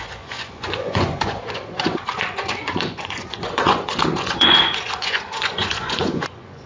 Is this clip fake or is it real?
fake